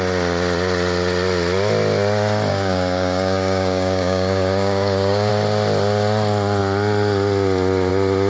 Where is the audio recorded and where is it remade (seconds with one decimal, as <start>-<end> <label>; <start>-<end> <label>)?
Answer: 0.0-2.5 recorded; 2.5-5.3 remade; 5.3-8.3 recorded